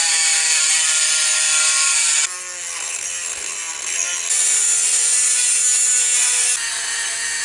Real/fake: real